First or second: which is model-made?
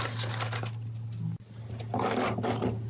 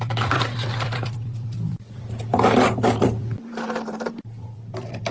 second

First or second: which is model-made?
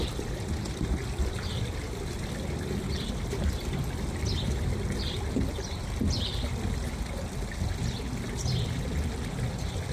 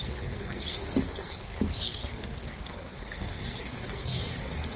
second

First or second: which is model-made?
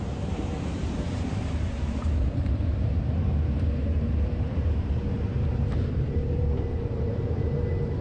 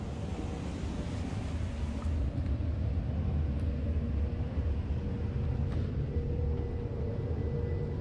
first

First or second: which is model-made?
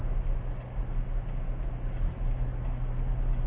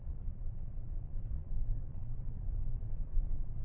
second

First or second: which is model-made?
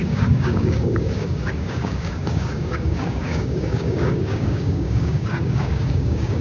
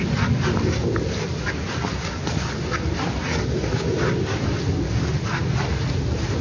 first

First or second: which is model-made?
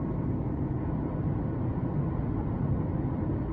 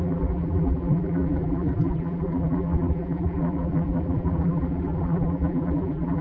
second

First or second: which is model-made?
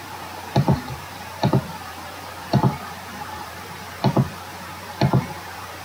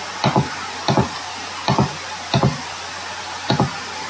first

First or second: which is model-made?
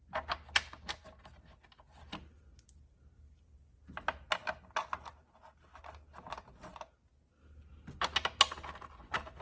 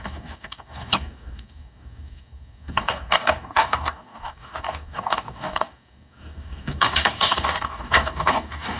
second